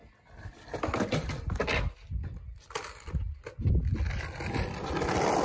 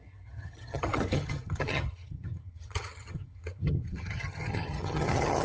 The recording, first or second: first